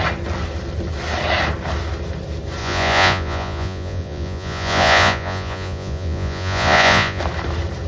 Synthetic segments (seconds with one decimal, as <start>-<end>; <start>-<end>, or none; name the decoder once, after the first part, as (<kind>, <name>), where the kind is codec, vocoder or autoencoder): 2.6-7.2 (vocoder, Vocos)